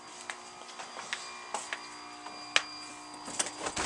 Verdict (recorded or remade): recorded